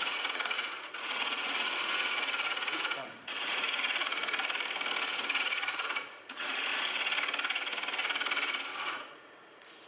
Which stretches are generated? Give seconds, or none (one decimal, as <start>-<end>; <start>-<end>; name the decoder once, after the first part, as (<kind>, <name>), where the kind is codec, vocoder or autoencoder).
0.0-4.2 (vocoder, Vocos); 5.4-6.7; 8.8-9.9